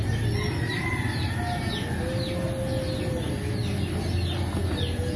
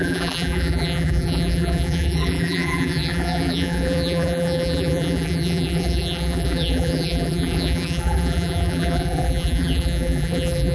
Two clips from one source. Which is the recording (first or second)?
first